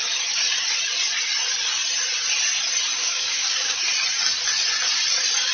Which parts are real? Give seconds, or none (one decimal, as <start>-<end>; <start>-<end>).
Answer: 0.0-3.0; 3.8-5.5